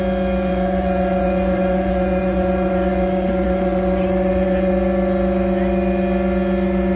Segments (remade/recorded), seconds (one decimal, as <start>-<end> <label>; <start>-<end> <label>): 0.0-0.5 recorded; 0.5-4.7 remade; 4.7-7.0 recorded